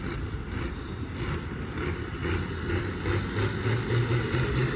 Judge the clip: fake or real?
real